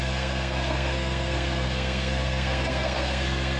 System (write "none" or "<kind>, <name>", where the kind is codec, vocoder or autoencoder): codec, SNAC